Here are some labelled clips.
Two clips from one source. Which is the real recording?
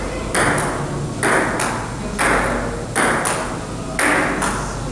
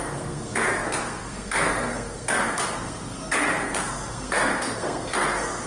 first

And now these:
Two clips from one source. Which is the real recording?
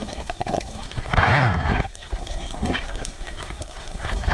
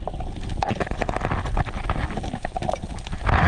second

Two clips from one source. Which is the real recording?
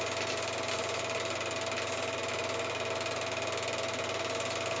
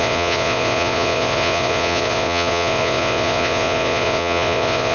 first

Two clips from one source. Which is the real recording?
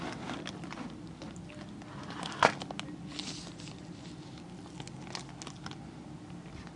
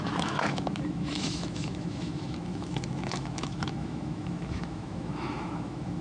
first